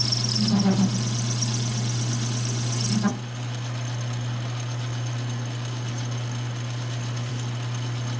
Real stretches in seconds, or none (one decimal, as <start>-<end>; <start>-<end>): 0.0-8.2